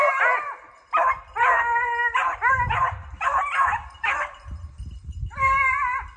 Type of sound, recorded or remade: recorded